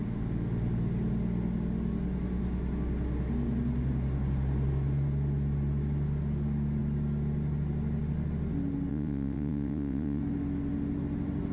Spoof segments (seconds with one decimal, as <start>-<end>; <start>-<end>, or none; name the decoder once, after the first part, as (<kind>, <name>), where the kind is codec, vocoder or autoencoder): 8.9-10.2 (vocoder, WaveNeXt)